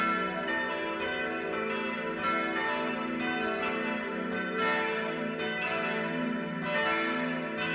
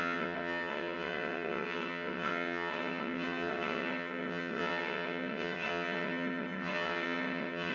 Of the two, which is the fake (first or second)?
second